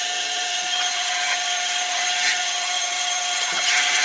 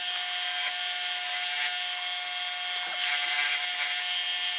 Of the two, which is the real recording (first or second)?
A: second